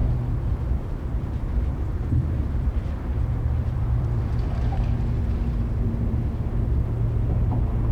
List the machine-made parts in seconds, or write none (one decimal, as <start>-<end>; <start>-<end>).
0.0-4.2